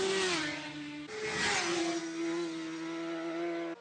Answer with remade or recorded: recorded